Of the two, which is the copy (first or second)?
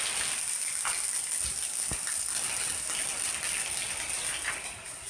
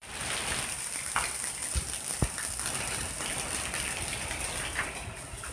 second